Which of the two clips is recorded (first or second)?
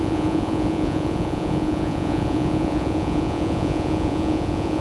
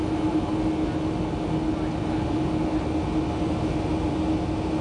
second